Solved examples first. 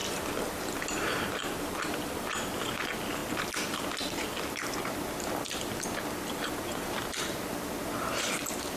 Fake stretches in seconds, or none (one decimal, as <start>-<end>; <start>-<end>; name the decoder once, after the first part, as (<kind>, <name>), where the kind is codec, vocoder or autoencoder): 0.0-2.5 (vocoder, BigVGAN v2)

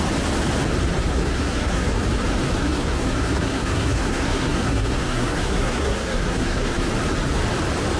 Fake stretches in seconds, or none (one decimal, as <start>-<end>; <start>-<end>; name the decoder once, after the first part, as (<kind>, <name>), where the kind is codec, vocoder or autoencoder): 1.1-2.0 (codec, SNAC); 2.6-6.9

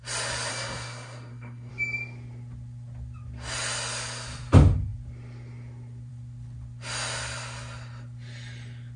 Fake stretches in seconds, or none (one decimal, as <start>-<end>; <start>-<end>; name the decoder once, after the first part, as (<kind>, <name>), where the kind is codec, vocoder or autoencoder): 0.5-1.7 (codec, SNAC)